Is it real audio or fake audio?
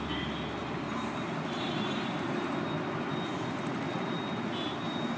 real